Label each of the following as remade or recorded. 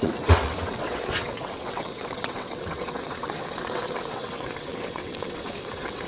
remade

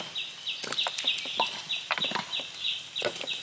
recorded